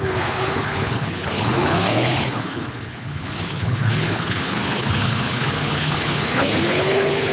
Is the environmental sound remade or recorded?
remade